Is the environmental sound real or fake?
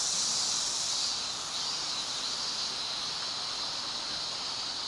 real